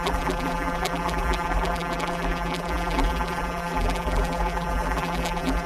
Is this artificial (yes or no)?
yes